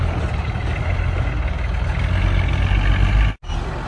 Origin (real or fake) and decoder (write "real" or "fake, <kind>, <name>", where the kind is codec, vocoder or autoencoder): real